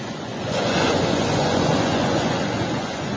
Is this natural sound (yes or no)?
no